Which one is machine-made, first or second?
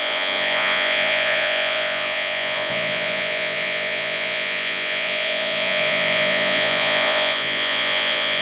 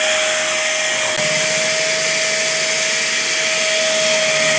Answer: first